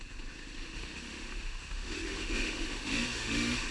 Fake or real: fake